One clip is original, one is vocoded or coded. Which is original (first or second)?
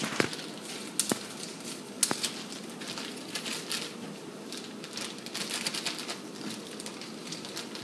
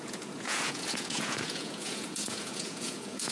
first